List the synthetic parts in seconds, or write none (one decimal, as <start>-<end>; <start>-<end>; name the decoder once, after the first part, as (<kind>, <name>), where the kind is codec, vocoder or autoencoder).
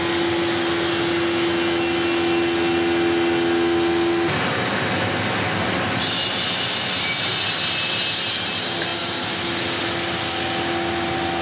none